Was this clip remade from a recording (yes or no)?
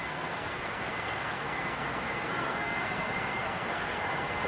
yes